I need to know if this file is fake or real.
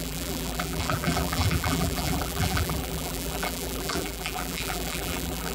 fake